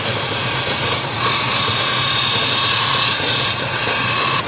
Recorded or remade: remade